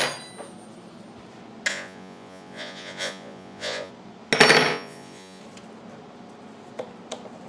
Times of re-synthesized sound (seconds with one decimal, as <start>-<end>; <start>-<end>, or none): 1.7-3.9; 4.7-5.4